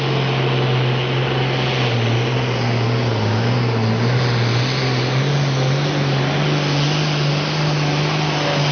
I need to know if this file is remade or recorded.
recorded